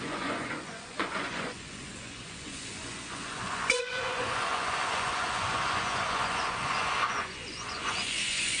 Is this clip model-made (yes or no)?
yes